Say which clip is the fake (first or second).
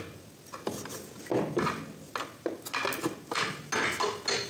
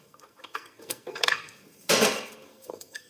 second